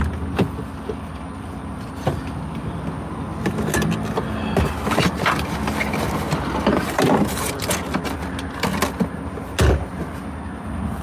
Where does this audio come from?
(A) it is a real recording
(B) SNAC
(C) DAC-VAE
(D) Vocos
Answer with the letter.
A